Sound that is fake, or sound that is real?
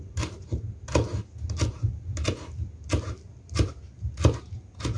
real